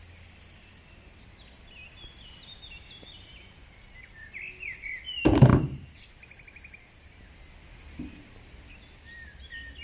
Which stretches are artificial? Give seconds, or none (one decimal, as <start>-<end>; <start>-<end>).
none